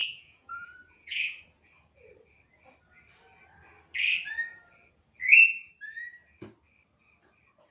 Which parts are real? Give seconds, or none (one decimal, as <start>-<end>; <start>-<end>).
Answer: 1.4-5.2; 5.7-7.7